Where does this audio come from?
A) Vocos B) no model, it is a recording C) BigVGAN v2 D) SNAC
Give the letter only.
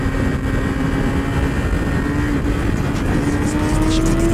B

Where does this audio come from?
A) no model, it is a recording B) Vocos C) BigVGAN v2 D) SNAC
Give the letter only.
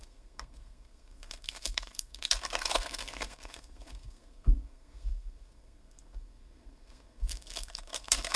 D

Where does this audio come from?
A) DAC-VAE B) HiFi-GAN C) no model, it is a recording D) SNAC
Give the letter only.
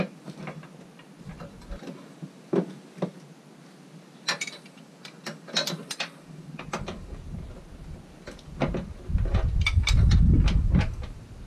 C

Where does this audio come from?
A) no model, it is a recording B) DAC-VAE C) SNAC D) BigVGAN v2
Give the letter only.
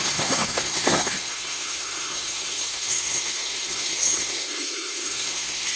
C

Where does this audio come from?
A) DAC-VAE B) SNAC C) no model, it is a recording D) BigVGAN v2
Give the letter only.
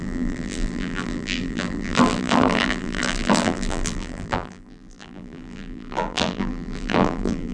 D